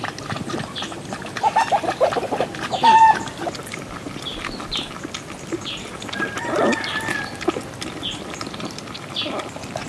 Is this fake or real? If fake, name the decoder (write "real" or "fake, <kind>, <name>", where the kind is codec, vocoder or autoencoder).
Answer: real